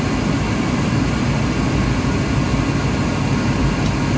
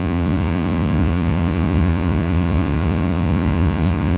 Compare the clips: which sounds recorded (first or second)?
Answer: first